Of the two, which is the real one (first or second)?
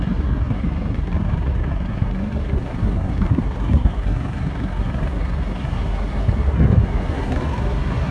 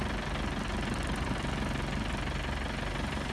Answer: second